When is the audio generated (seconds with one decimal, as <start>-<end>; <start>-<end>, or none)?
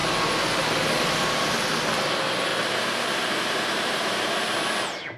2.5-4.3